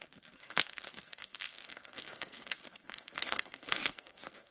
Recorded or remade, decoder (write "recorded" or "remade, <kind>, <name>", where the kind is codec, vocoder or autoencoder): remade, codec, SNAC